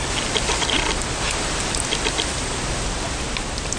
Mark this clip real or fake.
real